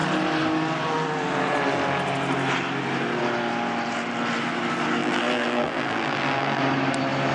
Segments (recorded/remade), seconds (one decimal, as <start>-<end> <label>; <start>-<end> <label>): 0.0-5.0 recorded; 5.0-6.6 remade; 6.6-7.3 recorded